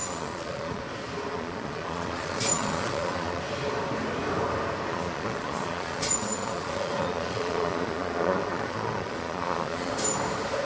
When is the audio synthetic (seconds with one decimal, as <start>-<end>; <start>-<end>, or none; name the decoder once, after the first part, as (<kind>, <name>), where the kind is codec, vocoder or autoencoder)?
0.0-0.8 (vocoder, Vocos); 1.3-3.4; 4.9-9.9